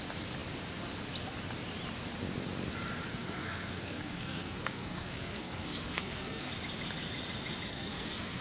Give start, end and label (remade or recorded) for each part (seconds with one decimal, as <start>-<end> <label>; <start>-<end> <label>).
0.0-3.1 recorded; 3.1-6.5 remade; 6.5-7.7 recorded; 7.7-8.4 remade